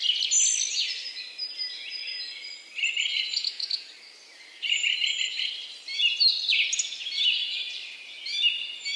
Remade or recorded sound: recorded